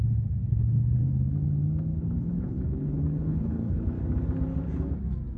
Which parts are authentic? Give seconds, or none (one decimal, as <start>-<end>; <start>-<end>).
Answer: 0.0-0.4; 1.0-1.9; 3.8-5.4